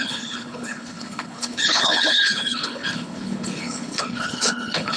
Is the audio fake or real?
fake